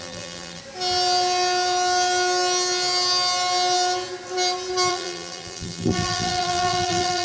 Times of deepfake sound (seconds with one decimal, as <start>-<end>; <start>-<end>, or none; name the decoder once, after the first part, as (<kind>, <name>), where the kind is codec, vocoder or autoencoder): 0.0-0.6 (vocoder, BigVGAN v2); 4.9-7.2